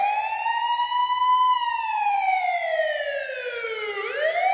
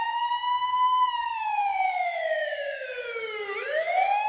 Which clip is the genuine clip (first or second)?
first